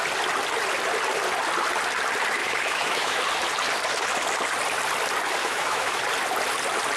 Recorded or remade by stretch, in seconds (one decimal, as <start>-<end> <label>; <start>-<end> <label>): 0.0-2.4 recorded; 2.4-3.2 remade; 3.2-5.4 recorded; 5.4-6.0 remade; 6.0-7.0 recorded